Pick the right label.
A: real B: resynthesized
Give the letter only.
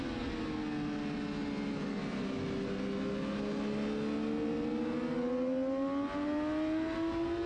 A